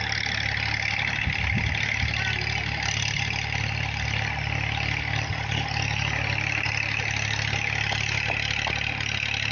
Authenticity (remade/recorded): recorded